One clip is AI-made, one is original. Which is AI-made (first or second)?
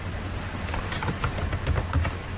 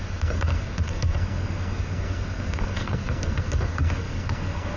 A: second